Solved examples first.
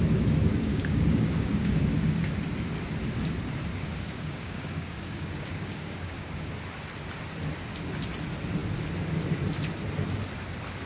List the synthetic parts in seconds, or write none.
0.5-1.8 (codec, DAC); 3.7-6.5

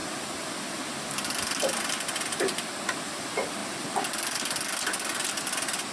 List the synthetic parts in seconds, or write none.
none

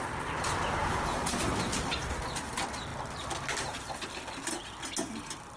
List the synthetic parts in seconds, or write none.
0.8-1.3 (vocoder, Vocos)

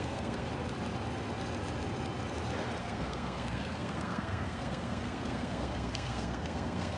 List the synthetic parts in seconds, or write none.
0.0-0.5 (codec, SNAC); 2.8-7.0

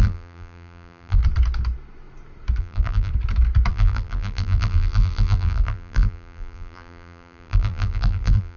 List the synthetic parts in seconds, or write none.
0.0-1.2 (vocoder, BigVGAN v2); 2.6-3.1; 3.7-8.6

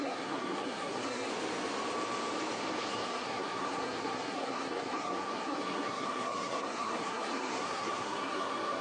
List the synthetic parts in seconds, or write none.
0.0-1.3 (codec, SNAC); 2.9-8.8

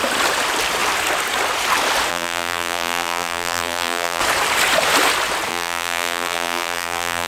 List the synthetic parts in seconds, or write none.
2.1-4.2 (vocoder, BigVGAN v2); 5.5-7.3